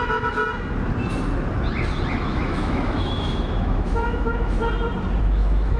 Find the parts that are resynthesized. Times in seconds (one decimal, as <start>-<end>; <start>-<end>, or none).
0.0-0.4; 2.1-4.6; 5.2-5.8